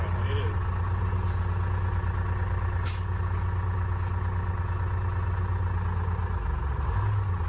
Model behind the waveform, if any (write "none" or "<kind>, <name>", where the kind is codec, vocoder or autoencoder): none